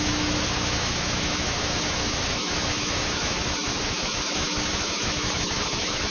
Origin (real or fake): fake